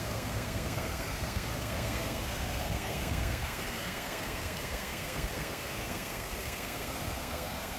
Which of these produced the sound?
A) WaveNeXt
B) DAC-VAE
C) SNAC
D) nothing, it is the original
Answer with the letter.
C